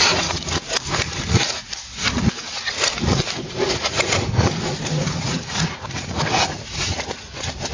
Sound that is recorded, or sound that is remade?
remade